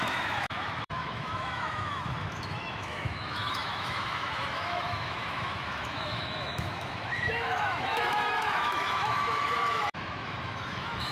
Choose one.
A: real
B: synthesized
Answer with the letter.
B